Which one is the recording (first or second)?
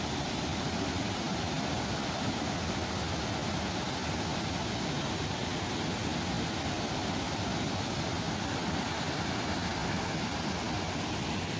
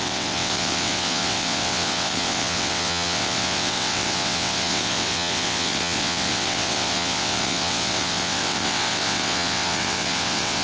first